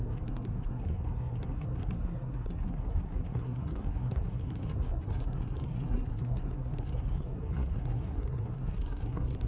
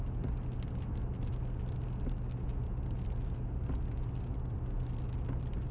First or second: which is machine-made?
first